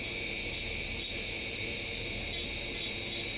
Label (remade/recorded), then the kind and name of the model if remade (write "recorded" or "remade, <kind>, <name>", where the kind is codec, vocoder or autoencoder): remade, vocoder, BigVGAN v2